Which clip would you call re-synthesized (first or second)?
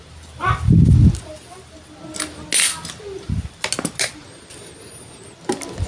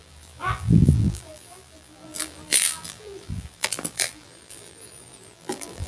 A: second